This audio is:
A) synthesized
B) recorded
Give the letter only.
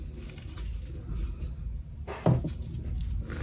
B